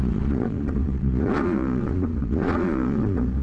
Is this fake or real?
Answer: fake